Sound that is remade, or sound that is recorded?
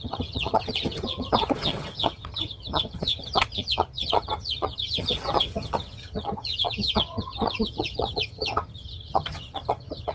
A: remade